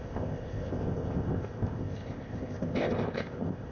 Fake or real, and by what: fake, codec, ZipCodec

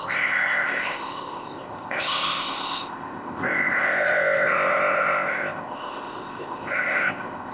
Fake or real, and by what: fake, codec, ZipCodec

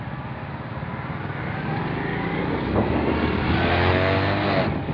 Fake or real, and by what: real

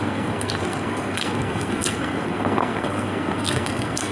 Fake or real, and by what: fake, codec, SNAC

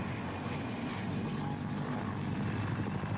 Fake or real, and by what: real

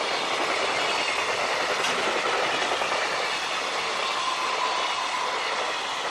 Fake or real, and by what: real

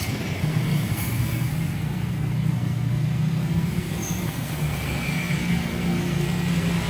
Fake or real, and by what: fake, codec, SNAC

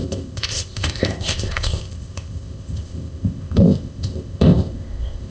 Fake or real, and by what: fake, codec, ZipCodec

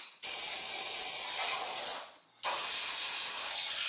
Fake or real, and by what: real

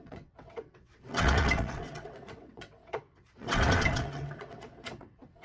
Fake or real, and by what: fake, vocoder, WaveNeXt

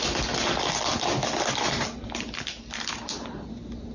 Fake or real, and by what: real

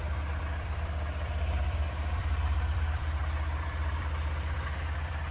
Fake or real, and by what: fake, vocoder, BigVGAN v2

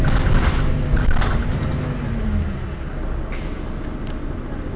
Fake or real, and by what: real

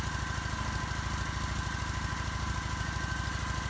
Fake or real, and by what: real